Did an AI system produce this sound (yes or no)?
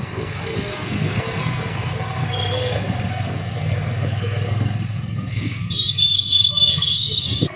yes